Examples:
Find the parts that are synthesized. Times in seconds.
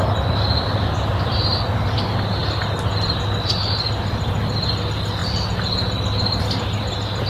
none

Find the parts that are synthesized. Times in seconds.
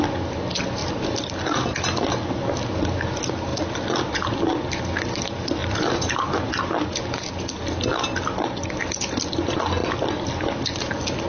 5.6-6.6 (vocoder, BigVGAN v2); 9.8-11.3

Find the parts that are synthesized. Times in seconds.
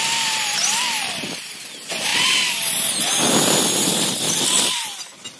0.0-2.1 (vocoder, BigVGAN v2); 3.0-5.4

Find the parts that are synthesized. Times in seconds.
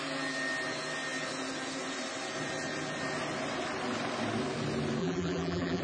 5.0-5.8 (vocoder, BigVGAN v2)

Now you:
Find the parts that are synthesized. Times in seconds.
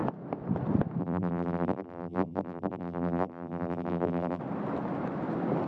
1.0-4.4 (vocoder, BigVGAN v2)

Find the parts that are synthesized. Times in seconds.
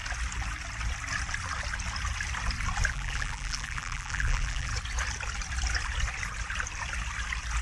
2.9-4.7 (vocoder, BigVGAN v2)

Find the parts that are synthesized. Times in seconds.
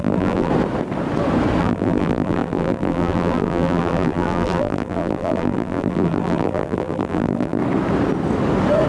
0.0-0.5 (vocoder, BigVGAN v2); 1.6-7.6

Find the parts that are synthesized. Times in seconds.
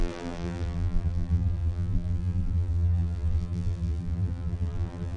0.0-5.2 (vocoder, BigVGAN v2)